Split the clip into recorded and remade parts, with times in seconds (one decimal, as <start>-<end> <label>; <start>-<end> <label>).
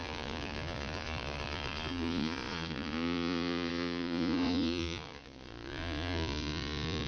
0.0-7.1 remade